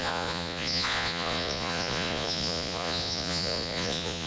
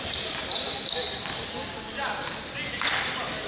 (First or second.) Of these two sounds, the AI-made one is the first